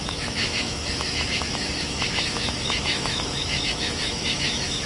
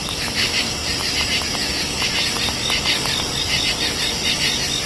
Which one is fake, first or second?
first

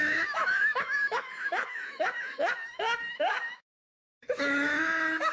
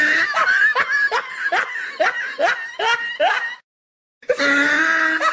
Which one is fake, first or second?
first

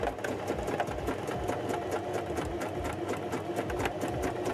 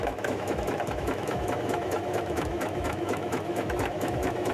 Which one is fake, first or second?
second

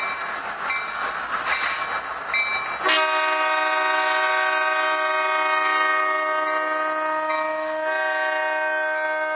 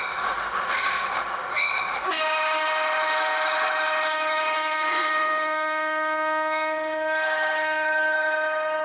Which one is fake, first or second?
second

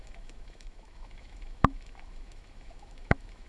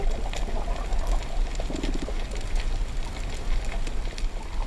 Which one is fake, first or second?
first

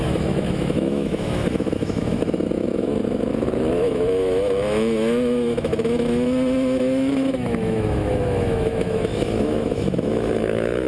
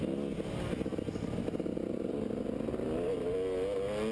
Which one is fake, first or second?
first